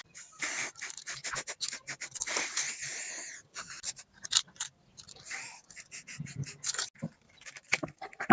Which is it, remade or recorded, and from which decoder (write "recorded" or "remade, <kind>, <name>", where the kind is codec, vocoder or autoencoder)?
recorded